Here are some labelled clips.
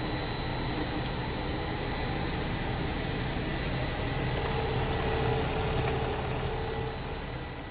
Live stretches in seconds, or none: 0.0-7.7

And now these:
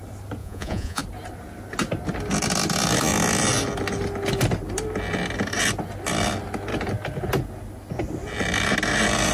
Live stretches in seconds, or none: 0.0-0.4; 1.0-9.3

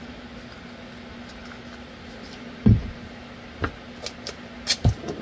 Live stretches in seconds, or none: 0.0-5.2